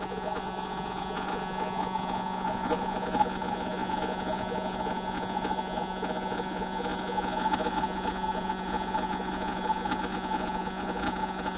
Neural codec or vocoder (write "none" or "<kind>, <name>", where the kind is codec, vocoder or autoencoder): vocoder, Vocos